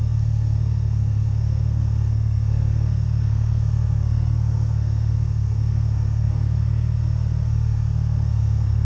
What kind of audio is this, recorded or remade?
remade